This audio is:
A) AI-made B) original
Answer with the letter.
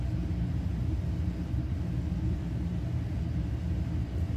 B